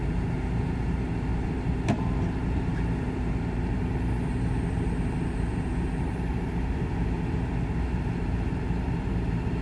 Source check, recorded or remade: remade